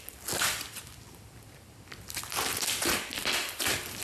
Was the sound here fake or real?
real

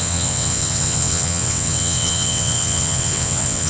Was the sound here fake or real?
fake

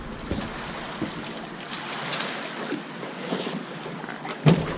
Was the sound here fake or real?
real